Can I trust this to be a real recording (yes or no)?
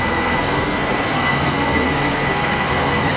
no